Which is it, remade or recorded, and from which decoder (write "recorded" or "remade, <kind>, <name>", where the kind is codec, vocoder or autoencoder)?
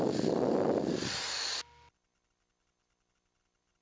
recorded